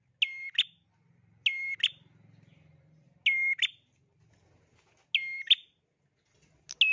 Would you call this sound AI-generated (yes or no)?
no